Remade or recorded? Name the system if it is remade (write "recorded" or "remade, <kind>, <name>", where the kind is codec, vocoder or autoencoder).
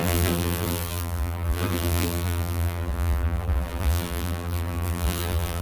remade, vocoder, BigVGAN v2